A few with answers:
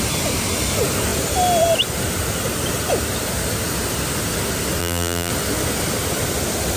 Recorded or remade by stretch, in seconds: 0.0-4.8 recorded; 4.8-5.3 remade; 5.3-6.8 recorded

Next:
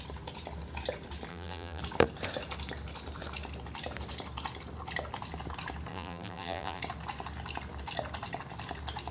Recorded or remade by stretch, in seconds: 0.0-1.3 recorded; 1.3-1.8 remade; 1.8-5.9 recorded; 5.9-6.8 remade; 6.8-9.1 recorded

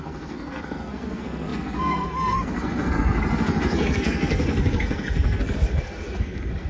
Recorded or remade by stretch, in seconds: 0.0-6.7 remade

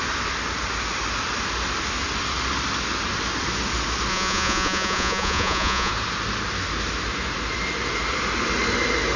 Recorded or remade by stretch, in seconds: 0.0-4.1 recorded; 4.1-5.9 remade; 5.9-9.2 recorded

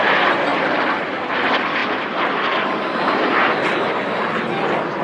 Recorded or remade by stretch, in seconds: 0.0-5.0 recorded

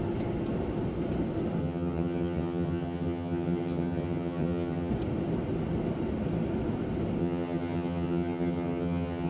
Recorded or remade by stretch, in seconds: 0.0-1.6 recorded; 1.6-4.9 remade; 4.9-7.2 recorded; 7.2-9.3 remade